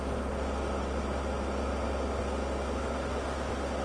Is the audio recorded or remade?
recorded